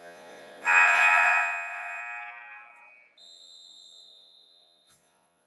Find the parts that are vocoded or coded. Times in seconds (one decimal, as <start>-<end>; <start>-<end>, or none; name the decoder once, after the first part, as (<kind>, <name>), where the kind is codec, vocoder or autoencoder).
0.0-2.0 (vocoder, Vocos); 3.2-5.5